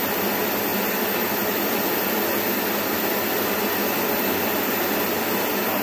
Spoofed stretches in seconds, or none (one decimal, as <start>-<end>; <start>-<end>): none